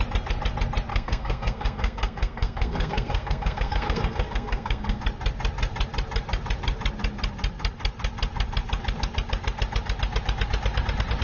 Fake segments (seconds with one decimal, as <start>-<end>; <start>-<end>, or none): 0.9-5.0